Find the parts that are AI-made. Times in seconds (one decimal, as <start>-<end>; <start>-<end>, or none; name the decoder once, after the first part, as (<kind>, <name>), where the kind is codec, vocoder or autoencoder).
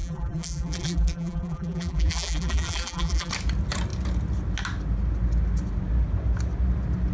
0.0-3.3 (vocoder, BigVGAN v2)